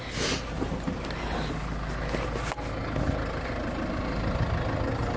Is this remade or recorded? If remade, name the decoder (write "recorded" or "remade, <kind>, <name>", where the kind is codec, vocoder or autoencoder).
recorded